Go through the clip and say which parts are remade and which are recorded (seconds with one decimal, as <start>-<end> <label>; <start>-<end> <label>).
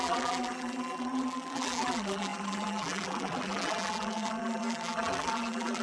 0.0-5.8 remade